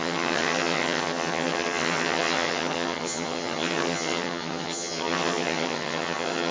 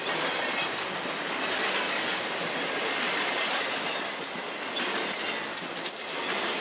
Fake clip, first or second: first